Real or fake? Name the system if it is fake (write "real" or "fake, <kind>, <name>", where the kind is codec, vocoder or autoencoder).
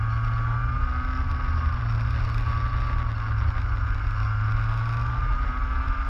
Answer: real